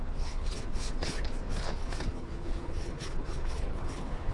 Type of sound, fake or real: fake